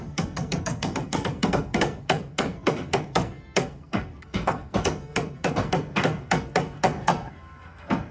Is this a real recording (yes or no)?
no